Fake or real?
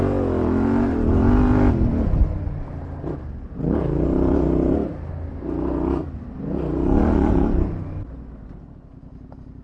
real